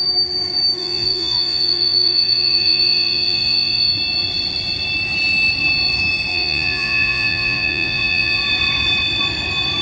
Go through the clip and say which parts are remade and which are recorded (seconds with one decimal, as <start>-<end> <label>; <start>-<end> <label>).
0.0-0.8 recorded; 0.8-3.9 remade; 3.9-6.3 recorded; 6.3-8.4 remade; 8.4-9.8 recorded